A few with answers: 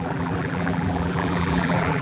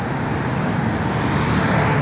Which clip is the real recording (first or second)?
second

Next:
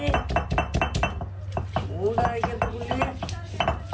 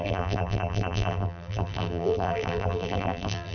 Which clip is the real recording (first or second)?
first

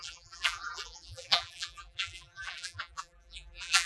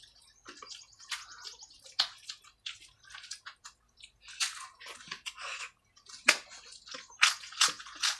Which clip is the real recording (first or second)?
second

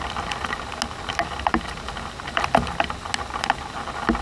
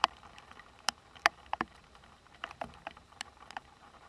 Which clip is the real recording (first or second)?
first